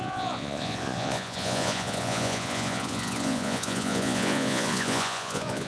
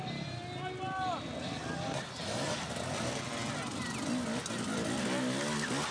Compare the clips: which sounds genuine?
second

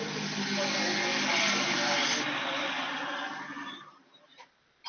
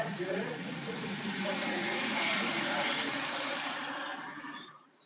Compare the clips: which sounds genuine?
first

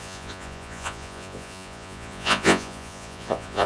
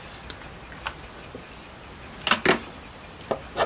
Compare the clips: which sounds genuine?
second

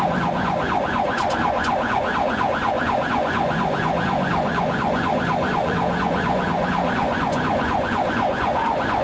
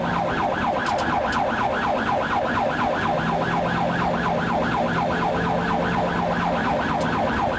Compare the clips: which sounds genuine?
second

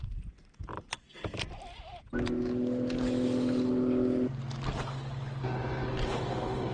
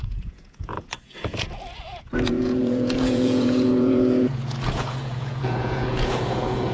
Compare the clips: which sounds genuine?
first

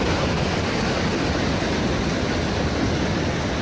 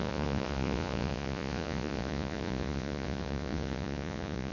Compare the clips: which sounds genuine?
first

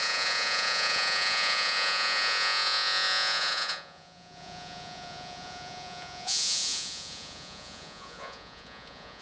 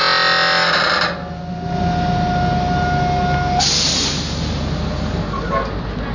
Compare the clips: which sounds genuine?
second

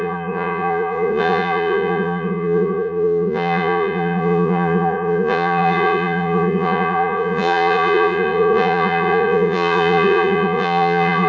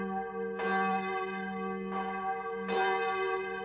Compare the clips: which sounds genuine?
second